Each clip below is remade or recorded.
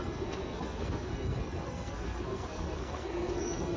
remade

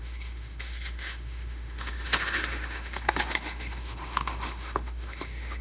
remade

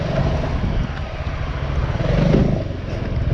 recorded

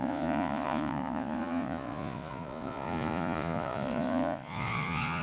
remade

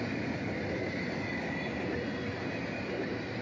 recorded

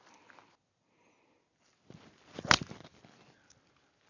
recorded